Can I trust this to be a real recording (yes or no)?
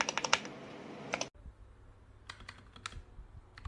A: yes